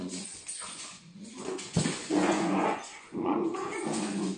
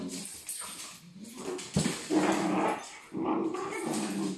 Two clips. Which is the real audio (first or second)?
second